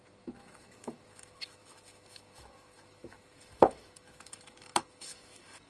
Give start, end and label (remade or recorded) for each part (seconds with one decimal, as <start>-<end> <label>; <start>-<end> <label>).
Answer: 0.0-5.7 remade